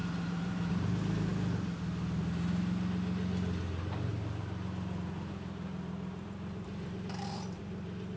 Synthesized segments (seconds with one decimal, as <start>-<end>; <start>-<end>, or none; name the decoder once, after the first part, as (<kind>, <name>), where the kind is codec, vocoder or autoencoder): 0.0-0.7 (vocoder, BigVGAN v2); 4.1-8.2